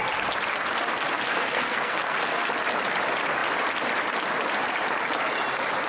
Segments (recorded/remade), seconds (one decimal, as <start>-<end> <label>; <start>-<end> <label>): 0.0-1.3 recorded; 1.3-2.5 remade; 2.5-5.9 recorded